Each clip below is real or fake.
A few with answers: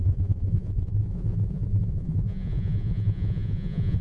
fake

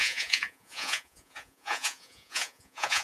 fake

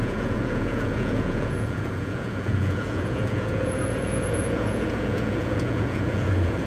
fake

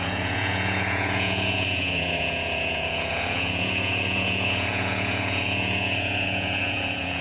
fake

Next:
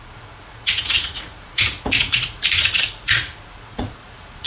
fake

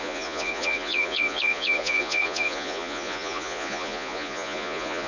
fake